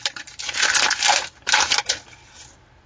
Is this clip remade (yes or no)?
no